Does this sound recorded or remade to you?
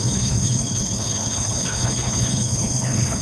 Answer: remade